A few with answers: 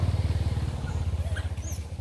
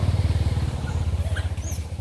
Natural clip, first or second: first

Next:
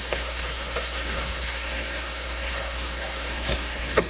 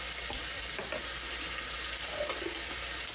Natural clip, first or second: second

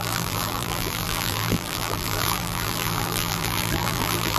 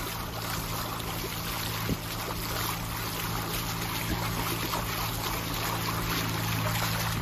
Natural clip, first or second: second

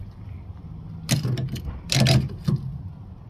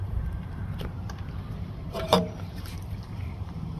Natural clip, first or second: first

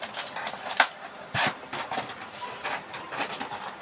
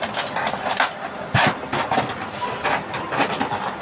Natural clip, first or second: second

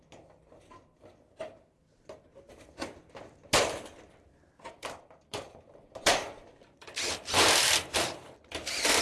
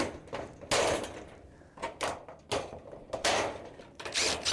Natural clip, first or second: second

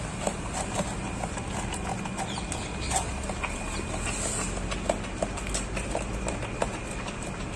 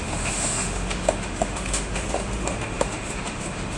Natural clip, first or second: first